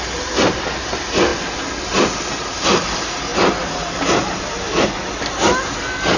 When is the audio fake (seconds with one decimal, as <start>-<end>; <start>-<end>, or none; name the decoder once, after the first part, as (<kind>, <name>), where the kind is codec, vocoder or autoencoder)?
none

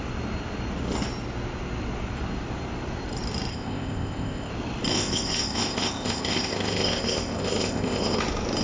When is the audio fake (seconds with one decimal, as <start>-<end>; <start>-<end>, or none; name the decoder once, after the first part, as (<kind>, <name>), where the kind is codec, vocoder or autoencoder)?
3.5-4.5 (codec, ZipCodec); 4.9-8.2